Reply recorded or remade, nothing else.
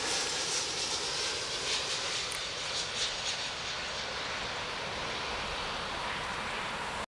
recorded